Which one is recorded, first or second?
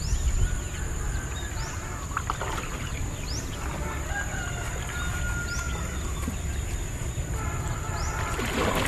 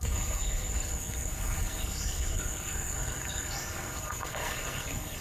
first